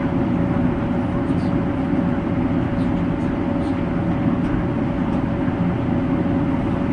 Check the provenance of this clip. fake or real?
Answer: real